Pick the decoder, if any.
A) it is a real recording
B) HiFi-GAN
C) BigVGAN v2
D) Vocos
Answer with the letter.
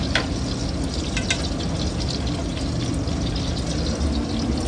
A